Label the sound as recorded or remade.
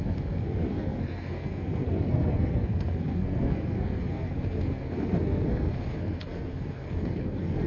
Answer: remade